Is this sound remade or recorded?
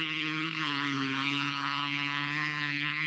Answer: remade